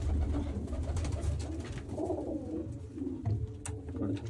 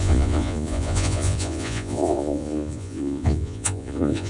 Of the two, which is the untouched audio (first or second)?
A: first